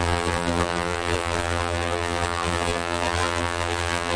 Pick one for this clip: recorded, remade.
remade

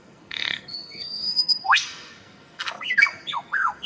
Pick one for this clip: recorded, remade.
remade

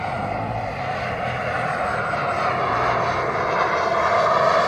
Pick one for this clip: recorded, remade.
recorded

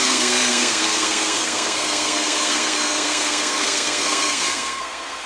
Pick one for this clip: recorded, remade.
remade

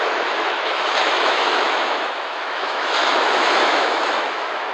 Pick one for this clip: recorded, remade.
remade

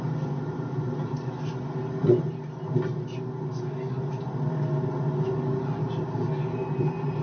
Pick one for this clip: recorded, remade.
recorded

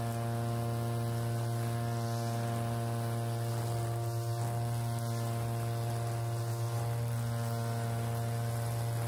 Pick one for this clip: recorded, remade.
recorded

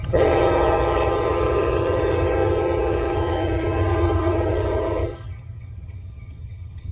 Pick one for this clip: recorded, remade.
remade